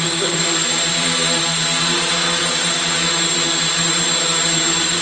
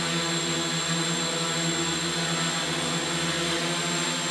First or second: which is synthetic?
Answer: first